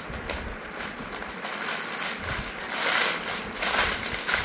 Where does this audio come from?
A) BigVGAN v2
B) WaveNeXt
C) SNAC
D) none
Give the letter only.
D